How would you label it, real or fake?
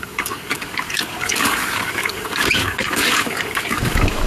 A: fake